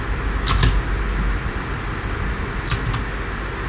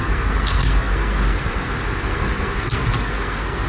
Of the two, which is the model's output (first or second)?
second